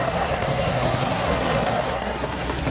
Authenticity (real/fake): fake